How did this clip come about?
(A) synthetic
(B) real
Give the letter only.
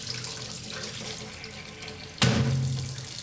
B